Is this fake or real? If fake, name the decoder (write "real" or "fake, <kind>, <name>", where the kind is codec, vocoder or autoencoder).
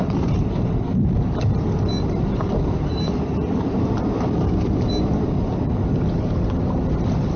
real